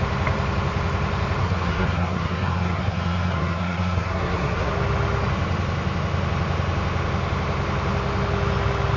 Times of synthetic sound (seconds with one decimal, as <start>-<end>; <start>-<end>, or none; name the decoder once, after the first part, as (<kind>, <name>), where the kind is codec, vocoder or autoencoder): 1.4-4.7 (codec, SNAC)